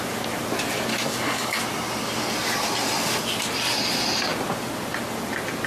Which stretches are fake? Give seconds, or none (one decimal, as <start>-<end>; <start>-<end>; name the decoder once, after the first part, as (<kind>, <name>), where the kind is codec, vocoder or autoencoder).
0.9-1.6 (codec, DAC)